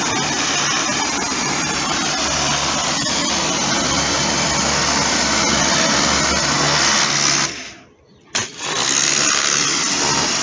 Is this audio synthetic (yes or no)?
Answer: no